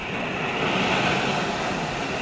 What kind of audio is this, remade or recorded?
recorded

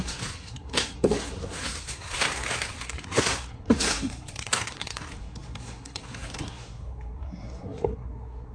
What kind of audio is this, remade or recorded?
remade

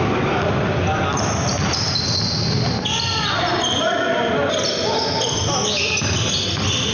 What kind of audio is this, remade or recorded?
recorded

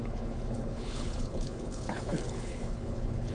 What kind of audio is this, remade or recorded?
remade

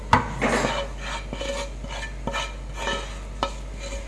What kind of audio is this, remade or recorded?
recorded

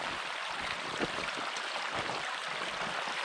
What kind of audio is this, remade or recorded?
recorded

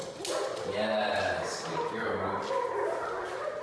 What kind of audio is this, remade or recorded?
recorded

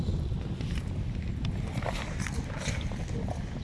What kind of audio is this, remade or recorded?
recorded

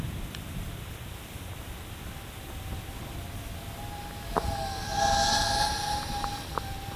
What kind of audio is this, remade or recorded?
recorded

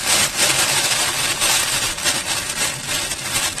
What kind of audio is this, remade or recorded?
recorded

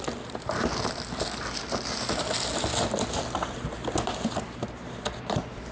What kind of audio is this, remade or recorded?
recorded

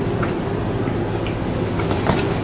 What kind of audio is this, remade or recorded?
recorded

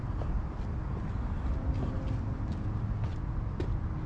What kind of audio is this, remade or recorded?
recorded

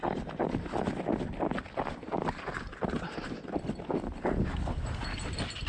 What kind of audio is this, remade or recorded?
recorded